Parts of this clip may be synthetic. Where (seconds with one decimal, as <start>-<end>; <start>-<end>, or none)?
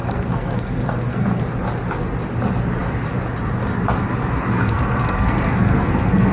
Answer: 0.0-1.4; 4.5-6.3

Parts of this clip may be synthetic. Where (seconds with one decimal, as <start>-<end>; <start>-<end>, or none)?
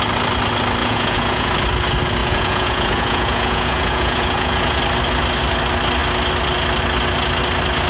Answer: 0.8-1.5; 2.2-4.8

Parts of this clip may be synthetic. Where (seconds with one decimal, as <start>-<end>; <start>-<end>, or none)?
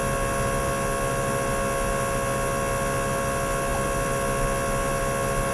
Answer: none